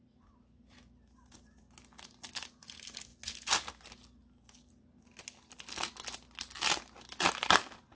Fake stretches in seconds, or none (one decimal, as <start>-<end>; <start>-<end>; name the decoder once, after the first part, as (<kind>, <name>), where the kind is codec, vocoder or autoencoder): none